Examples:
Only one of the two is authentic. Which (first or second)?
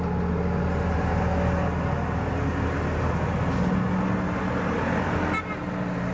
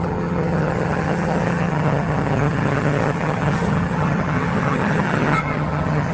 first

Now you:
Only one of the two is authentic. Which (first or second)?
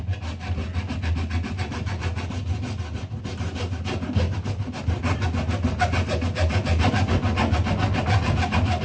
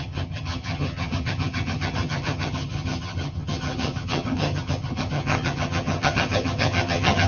first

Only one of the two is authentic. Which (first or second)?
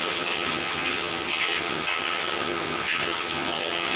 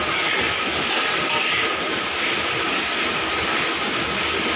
second